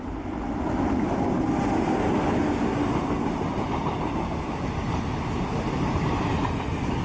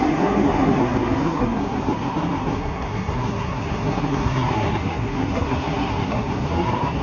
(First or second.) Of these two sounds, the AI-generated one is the second